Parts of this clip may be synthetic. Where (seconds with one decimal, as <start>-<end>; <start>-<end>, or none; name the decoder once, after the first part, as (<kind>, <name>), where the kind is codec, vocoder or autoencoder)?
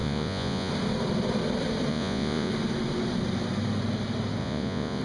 0.0-0.7 (vocoder, Vocos); 1.9-2.5; 4.4-5.0